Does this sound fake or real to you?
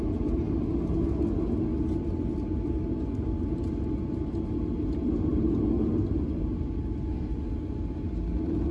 real